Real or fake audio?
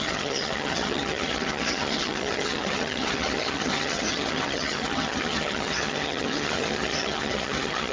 fake